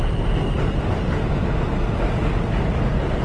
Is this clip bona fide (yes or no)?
yes